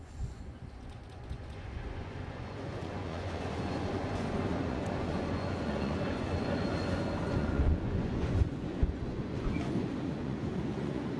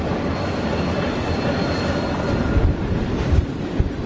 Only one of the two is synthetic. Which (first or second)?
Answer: first